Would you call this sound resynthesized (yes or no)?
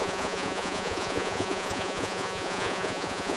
yes